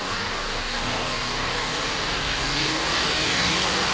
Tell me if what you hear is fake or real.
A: fake